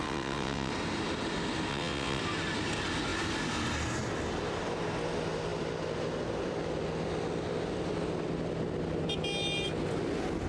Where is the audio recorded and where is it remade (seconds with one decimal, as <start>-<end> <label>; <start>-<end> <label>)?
0.0-0.7 remade; 0.7-1.7 recorded; 1.7-2.2 remade; 2.2-10.5 recorded